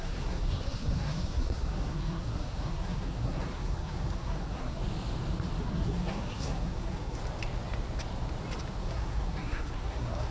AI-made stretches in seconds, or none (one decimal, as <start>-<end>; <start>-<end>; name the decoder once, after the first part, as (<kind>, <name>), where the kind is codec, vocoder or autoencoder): 0.0-4.8 (codec, SNAC); 5.6-7.2; 8.8-10.3